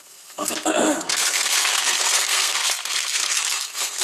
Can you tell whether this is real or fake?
fake